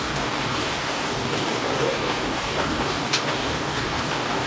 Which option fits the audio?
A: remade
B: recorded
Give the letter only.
A